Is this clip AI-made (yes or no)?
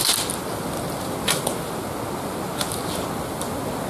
no